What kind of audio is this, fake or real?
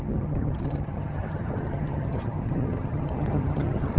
fake